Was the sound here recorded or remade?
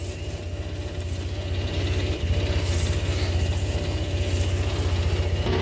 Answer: recorded